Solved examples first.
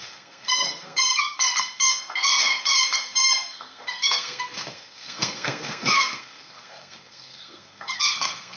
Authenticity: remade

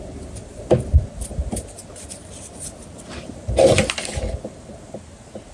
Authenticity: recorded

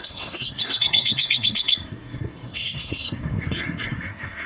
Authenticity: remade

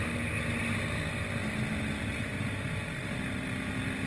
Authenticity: recorded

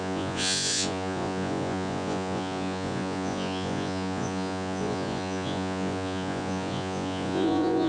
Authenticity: remade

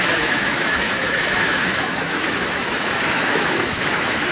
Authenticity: remade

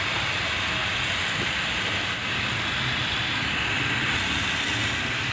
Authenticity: recorded